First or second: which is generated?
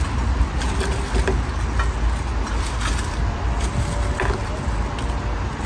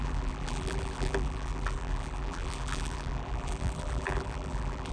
second